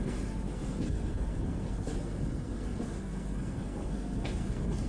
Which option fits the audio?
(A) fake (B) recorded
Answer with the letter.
A